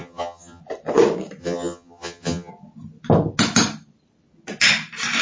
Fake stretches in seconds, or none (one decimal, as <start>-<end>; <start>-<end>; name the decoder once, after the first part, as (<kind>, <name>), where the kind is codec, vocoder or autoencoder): 0.0-0.6 (vocoder, HiFi-GAN); 1.4-2.5